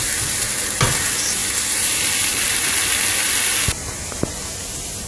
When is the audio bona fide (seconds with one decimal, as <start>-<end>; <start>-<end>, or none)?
0.0-5.1